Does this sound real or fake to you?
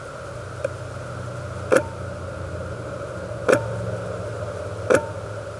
real